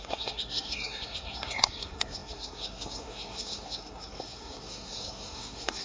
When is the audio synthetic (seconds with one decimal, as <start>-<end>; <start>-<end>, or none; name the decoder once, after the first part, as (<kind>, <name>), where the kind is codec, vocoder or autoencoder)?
0.0-5.8 (codec, SNAC)